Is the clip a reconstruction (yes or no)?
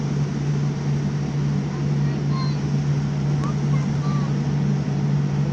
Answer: no